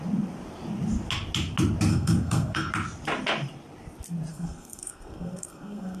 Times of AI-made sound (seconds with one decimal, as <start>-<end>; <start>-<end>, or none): 1.9-2.7; 4.3-6.0